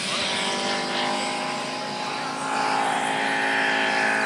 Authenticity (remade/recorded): recorded